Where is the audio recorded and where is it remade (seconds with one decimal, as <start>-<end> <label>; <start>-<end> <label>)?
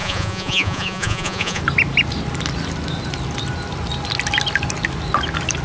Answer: 0.0-1.6 remade; 1.6-5.6 recorded